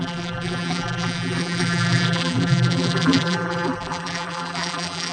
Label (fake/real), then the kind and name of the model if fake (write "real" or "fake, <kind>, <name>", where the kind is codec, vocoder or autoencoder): fake, vocoder, BigVGAN v2